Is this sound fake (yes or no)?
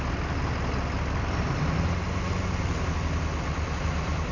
no